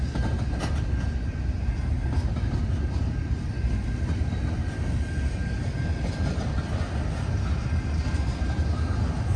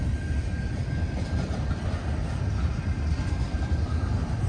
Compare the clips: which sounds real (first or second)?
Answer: first